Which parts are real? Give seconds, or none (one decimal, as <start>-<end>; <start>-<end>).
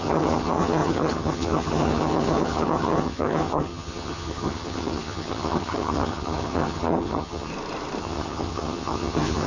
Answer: 7.5-8.0